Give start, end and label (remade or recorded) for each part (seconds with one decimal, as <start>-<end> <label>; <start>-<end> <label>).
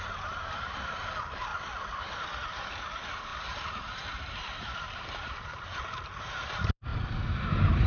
0.0-1.5 remade; 1.5-2.0 recorded; 2.0-7.9 remade